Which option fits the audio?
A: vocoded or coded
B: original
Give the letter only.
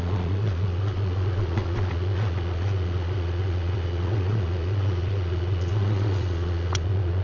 A